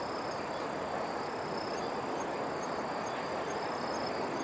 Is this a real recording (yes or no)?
yes